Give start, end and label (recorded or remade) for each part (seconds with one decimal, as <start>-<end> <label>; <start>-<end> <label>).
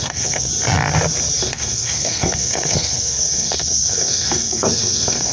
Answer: 0.0-0.5 remade; 0.5-1.4 recorded; 1.4-5.3 remade